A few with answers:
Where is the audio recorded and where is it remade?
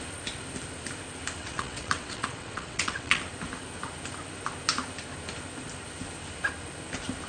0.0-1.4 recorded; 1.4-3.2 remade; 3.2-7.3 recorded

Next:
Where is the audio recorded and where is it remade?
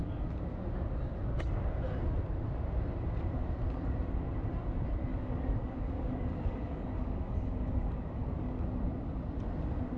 0.0-5.1 recorded; 5.1-8.8 remade; 8.8-10.0 recorded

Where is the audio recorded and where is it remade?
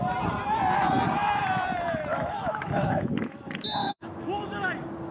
0.0-2.1 recorded; 2.1-3.4 remade; 3.4-3.8 recorded; 3.8-4.5 remade; 4.5-5.1 recorded